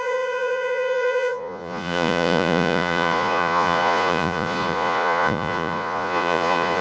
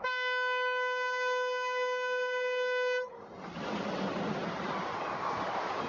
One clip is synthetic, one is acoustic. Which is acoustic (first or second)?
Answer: second